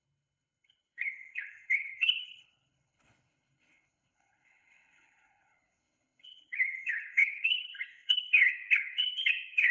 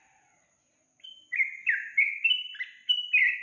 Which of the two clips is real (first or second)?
second